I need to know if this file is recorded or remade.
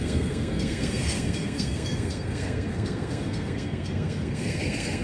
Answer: remade